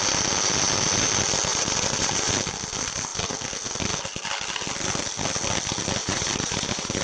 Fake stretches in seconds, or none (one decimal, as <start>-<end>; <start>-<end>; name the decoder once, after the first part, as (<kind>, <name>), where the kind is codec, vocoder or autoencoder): 1.5-2.3 (vocoder, BigVGAN v2); 6.0-7.0